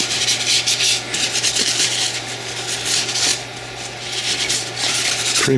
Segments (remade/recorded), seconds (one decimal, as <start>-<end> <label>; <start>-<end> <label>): 0.0-3.3 remade; 3.3-4.4 recorded; 4.4-5.6 remade